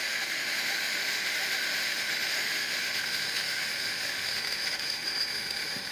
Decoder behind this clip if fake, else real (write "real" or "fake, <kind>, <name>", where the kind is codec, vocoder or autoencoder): fake, autoencoder, DAC-VAE